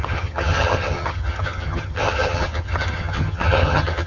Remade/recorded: remade